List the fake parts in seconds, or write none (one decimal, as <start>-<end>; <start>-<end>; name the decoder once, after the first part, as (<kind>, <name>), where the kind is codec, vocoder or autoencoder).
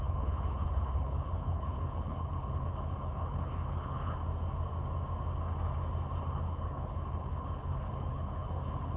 0.0-4.2 (codec, HILCodec); 6.2-9.0